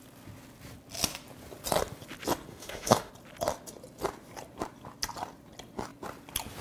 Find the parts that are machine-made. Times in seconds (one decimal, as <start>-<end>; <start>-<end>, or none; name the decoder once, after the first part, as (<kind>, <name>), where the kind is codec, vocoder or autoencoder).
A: 2.5-3.1 (autoencoder, DAC-VAE)